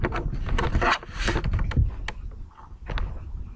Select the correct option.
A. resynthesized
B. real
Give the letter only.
B